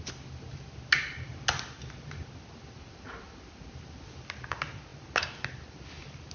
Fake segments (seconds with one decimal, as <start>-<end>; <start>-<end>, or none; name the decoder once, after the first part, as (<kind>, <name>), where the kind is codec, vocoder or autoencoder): none